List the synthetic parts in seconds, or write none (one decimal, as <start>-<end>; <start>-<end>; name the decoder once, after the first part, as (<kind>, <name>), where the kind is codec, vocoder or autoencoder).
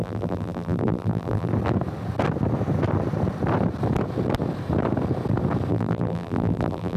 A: 0.0-1.5 (vocoder, BigVGAN v2); 5.7-7.0